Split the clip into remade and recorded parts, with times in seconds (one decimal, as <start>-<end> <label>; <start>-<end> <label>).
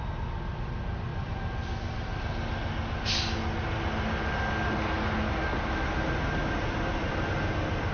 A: 0.0-7.9 recorded